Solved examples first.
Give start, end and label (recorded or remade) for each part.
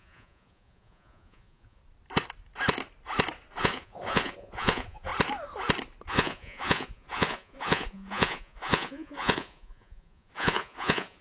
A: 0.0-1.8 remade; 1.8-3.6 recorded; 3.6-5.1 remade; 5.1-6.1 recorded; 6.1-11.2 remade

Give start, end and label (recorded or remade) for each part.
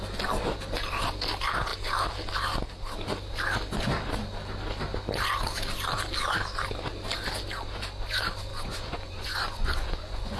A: 0.0-8.5 recorded; 8.5-10.4 remade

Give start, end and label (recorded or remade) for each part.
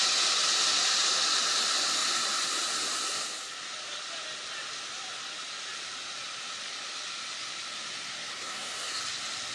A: 0.0-8.3 recorded; 8.3-9.0 remade; 9.0-9.5 recorded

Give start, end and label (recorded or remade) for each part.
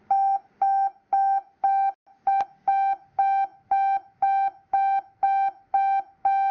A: 0.0-6.5 recorded